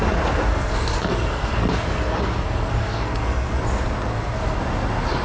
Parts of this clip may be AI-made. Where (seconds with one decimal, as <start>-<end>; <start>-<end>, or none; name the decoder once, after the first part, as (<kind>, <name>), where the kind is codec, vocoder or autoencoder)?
0.5-3.6 (codec, SNAC); 4.1-4.6